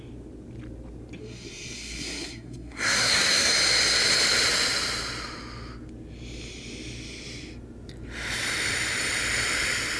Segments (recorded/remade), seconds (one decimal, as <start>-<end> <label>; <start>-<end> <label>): 0.0-1.2 recorded; 1.2-3.5 remade; 3.5-10.0 recorded